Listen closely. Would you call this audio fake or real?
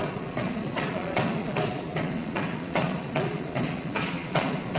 fake